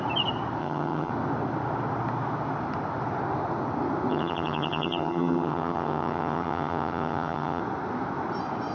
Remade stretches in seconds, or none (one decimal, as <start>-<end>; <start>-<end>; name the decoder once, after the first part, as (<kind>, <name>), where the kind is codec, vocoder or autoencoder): 0.6-1.1 (vocoder, HiFi-GAN); 4.1-7.6